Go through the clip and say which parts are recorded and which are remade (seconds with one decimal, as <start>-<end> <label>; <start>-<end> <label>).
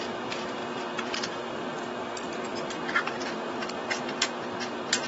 0.0-0.6 recorded; 0.6-3.7 remade; 3.7-5.1 recorded